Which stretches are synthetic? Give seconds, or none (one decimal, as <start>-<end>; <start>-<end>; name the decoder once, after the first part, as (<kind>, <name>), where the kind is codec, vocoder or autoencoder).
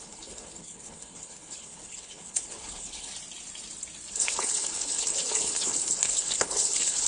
0.0-3.1 (codec, HILCodec); 4.1-7.1